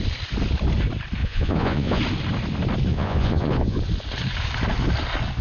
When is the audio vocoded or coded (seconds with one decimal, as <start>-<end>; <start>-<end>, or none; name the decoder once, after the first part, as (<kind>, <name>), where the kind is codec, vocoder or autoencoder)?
1.2-2.0 (vocoder, Vocos); 2.9-3.8